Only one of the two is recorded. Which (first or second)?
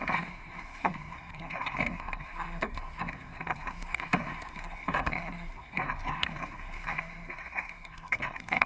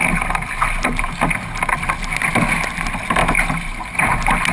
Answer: second